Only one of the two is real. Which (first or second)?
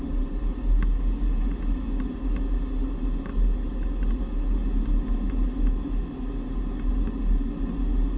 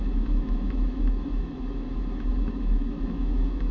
first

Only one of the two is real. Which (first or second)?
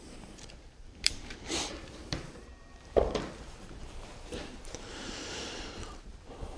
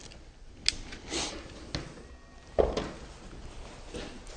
second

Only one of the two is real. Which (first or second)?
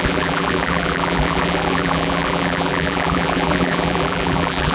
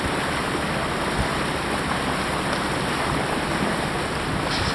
second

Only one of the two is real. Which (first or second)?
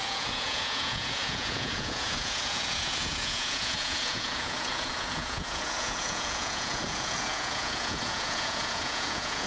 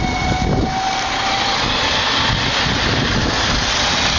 second